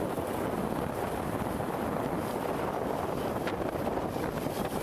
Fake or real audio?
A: real